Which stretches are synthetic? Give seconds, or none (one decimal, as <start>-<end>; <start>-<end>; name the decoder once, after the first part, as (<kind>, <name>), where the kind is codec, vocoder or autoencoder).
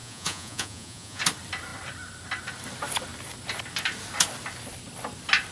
0.0-1.2 (vocoder, Vocos)